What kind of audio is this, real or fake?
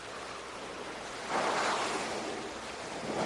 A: real